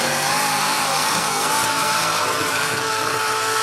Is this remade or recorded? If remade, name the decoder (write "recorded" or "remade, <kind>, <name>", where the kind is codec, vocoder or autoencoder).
remade, codec, SNAC